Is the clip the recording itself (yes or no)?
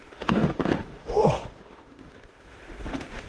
no